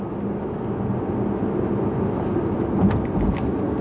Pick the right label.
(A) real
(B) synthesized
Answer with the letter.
A